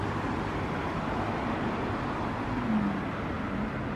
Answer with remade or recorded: recorded